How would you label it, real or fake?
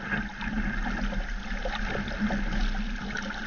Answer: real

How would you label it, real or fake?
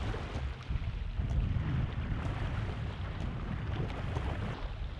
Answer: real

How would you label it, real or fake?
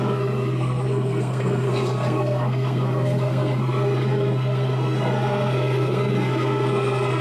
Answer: fake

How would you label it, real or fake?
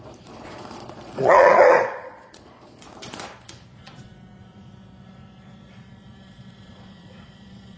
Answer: fake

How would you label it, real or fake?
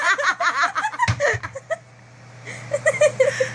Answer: real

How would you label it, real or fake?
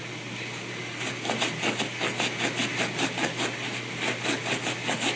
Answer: real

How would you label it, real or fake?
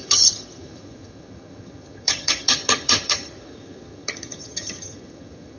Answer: fake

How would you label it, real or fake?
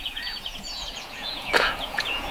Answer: fake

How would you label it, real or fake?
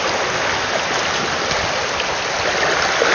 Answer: real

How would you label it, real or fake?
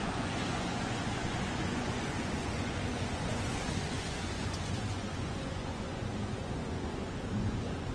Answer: fake